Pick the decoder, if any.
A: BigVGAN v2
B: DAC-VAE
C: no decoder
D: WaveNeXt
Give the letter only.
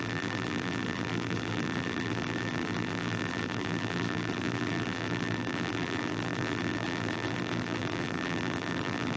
A